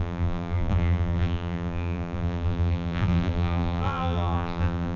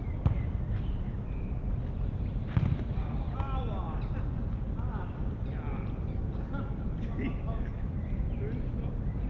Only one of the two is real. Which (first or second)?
second